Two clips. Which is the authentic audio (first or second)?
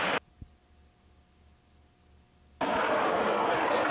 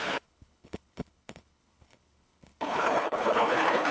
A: first